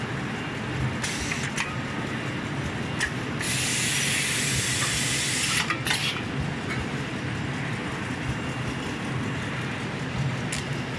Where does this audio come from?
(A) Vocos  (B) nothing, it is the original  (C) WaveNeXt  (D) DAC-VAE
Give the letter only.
B